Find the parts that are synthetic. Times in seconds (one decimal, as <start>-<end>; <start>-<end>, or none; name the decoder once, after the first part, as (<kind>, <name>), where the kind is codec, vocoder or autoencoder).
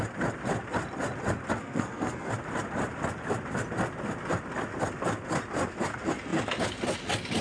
1.6-2.3 (codec, SNAC)